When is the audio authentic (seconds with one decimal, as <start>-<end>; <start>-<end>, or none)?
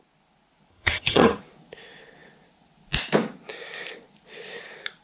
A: 0.0-0.7; 1.4-5.0